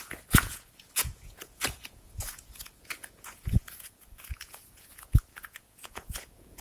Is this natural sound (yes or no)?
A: no